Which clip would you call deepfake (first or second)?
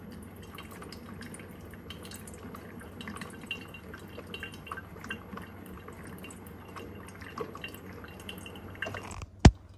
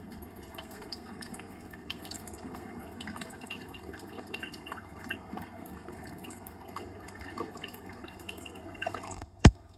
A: second